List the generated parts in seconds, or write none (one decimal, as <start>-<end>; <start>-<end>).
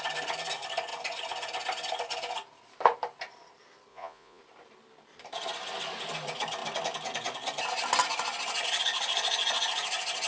3.9-4.4